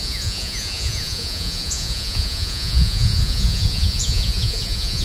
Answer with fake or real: fake